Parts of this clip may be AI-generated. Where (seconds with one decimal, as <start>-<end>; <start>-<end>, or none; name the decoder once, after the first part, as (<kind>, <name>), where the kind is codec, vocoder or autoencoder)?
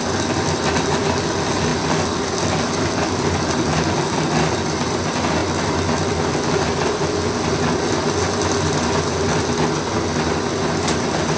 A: none